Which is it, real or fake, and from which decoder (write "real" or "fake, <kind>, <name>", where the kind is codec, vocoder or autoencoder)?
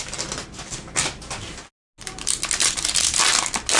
real